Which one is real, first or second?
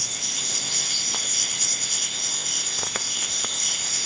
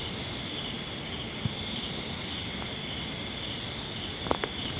second